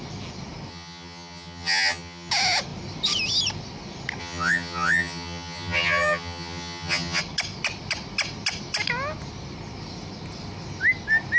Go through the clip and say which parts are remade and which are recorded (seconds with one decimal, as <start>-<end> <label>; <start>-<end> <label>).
0.0-0.7 recorded; 0.7-2.3 remade; 2.3-4.2 recorded; 4.2-7.2 remade; 7.2-11.4 recorded